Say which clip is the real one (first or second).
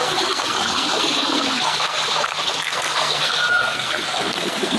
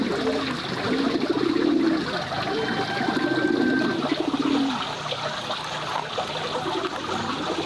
second